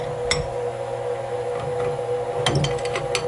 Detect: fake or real real